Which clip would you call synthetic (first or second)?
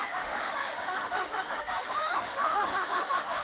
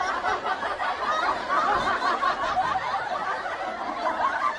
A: first